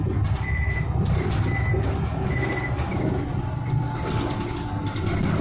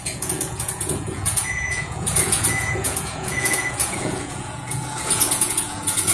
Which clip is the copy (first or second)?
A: second